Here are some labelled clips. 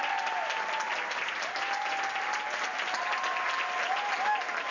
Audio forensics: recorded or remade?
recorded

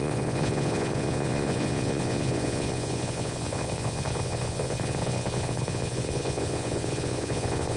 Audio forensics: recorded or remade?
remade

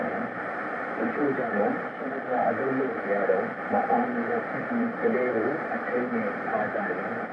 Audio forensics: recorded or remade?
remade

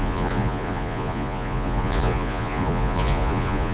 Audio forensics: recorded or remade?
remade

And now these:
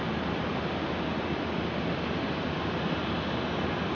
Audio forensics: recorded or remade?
recorded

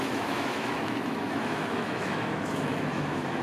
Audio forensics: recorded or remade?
remade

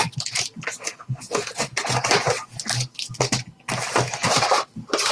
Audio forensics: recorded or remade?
recorded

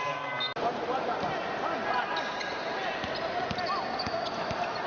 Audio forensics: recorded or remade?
recorded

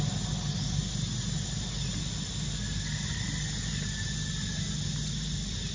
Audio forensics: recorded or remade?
recorded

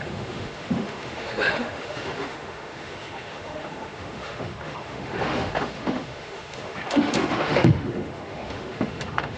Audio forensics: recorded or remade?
remade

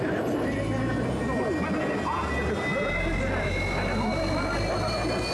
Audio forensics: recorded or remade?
recorded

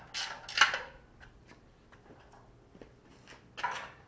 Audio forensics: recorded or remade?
recorded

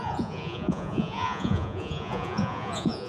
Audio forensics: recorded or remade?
remade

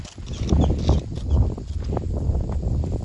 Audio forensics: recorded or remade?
recorded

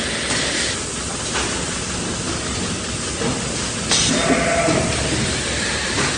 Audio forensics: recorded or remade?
recorded